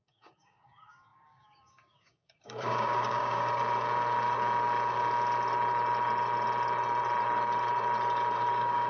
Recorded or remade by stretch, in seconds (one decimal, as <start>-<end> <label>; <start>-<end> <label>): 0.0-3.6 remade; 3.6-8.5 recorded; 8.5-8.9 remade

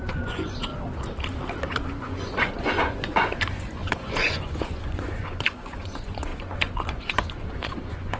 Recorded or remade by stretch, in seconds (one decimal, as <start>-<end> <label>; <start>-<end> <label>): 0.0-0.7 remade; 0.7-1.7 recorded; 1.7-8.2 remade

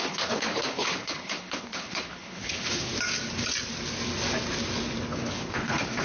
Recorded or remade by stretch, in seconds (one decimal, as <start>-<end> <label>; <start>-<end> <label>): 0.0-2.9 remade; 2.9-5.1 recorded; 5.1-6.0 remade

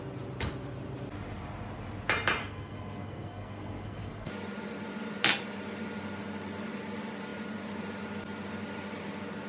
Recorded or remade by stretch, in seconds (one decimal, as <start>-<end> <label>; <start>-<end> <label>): 0.0-2.4 recorded; 2.4-4.3 remade; 4.3-9.5 recorded